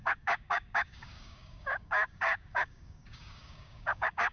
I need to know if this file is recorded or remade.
remade